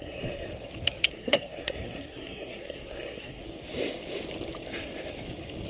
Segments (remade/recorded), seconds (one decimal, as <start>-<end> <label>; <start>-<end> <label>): 0.0-0.5 remade; 0.5-1.1 recorded; 1.1-3.4 remade; 3.4-5.7 recorded